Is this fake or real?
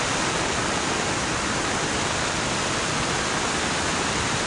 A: real